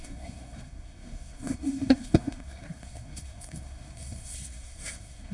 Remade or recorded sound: remade